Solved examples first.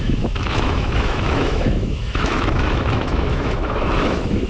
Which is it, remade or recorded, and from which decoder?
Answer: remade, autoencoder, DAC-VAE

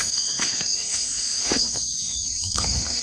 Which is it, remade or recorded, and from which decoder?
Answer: remade, autoencoder, DAC-VAE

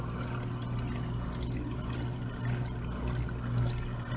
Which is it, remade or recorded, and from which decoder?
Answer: recorded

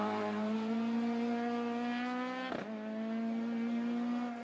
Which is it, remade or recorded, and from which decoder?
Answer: recorded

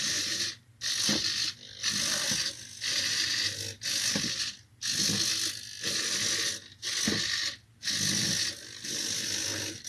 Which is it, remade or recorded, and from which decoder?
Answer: recorded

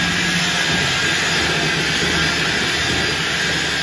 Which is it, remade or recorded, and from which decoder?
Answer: recorded